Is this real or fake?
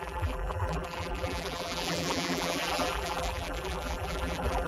fake